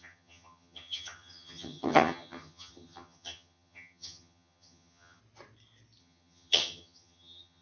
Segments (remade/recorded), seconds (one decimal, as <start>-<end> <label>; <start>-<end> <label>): 0.0-5.2 remade; 5.2-6.0 recorded; 6.0-7.6 remade